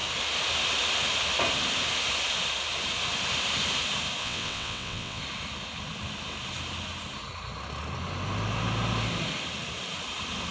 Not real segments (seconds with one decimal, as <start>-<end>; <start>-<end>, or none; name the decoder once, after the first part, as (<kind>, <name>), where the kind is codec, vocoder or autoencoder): 4.2-5.2 (vocoder, WaveNeXt)